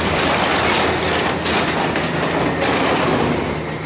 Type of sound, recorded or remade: recorded